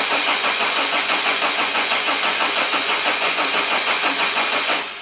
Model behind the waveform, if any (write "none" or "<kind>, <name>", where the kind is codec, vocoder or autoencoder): vocoder, Vocos